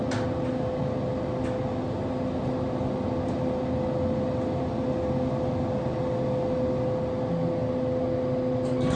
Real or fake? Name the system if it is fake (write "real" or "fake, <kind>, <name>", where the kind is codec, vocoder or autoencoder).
real